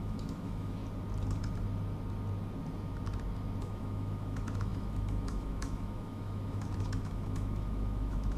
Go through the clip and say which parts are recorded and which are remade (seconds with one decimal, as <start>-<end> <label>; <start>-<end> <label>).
0.0-0.8 remade; 0.8-3.6 recorded; 3.6-8.4 remade